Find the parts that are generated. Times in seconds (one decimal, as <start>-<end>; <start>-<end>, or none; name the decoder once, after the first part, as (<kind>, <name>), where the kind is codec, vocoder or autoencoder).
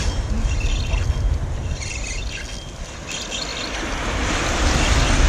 none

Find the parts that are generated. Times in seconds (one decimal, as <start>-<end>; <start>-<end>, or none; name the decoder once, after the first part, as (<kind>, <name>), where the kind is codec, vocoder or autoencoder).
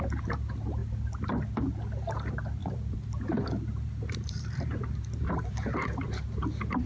2.6-6.2 (vocoder, BigVGAN v2)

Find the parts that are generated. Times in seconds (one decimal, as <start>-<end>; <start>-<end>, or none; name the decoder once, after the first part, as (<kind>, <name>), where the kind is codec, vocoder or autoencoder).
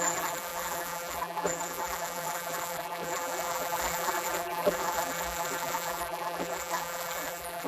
0.0-7.7 (vocoder, BigVGAN v2)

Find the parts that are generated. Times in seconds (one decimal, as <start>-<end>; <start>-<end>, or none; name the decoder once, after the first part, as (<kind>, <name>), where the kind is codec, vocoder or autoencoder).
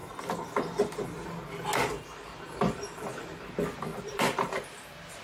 3.9-5.2 (vocoder, BigVGAN v2)